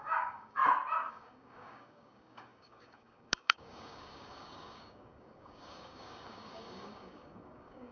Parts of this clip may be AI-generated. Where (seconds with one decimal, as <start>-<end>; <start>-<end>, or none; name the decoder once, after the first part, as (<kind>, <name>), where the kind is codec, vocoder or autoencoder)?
0.0-0.6 (codec, DAC); 1.1-7.9